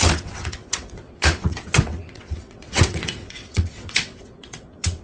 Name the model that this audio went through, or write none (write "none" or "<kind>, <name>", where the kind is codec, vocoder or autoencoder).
vocoder, WaveNeXt